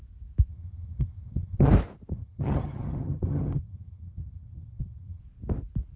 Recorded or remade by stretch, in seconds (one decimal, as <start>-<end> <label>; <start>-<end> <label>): 0.0-0.5 recorded; 0.5-1.7 remade; 1.7-2.1 recorded; 2.1-5.2 remade; 5.2-6.0 recorded